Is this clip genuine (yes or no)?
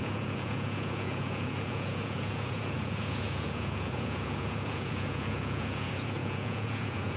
no